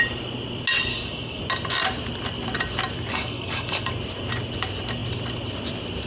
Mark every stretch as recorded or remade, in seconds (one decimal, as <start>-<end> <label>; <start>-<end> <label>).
0.0-0.9 recorded; 0.9-1.4 remade; 1.4-3.1 recorded; 3.1-3.9 remade; 3.9-6.1 recorded